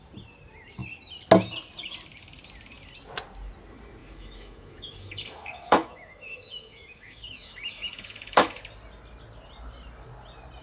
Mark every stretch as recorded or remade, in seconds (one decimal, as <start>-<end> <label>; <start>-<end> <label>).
0.0-4.0 recorded; 4.0-8.6 remade; 8.6-10.6 recorded